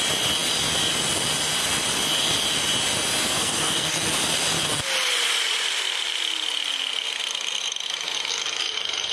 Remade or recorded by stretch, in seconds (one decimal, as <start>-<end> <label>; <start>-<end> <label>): 0.0-3.2 recorded; 3.2-3.9 remade; 3.9-9.1 recorded